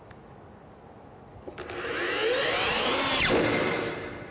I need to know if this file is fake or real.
real